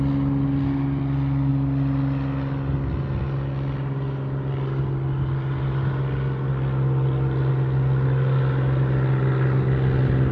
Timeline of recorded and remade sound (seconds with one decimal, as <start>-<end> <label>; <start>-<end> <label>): 0.0-10.3 recorded